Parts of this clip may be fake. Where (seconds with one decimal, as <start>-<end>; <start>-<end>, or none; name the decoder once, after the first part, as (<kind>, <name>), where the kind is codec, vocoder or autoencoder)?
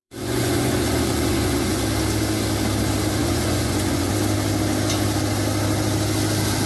0.0-1.8 (vocoder, Vocos); 3.2-4.1